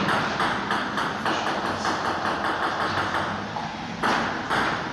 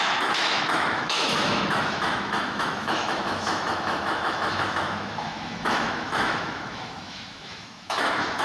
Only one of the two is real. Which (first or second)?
first